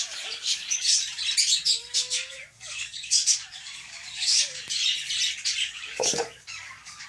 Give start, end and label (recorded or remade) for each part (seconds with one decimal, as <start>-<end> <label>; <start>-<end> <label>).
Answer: 0.0-1.0 remade; 1.0-1.8 recorded; 1.8-4.8 remade; 4.8-5.6 recorded; 5.6-7.1 remade